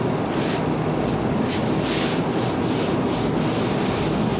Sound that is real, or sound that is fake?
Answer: real